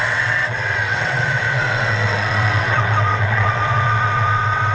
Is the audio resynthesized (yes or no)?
yes